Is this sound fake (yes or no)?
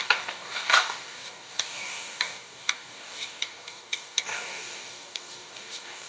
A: yes